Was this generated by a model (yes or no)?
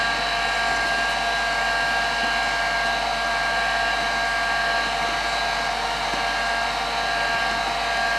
no